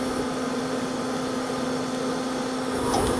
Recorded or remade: recorded